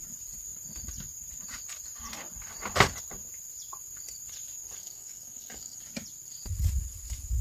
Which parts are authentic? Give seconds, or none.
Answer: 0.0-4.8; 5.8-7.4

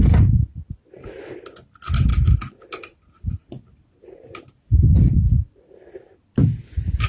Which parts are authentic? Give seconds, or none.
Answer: 0.7-2.1; 6.4-7.1

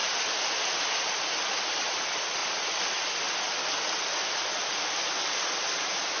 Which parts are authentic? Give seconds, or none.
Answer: 0.0-6.2